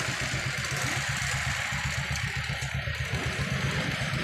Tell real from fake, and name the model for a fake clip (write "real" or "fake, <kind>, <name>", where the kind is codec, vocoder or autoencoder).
real